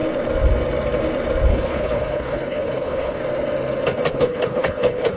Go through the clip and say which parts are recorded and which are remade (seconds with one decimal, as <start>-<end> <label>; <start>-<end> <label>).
0.0-1.5 recorded; 1.5-3.2 remade; 3.2-4.1 recorded; 4.1-5.2 remade